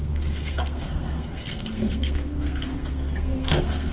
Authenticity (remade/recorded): remade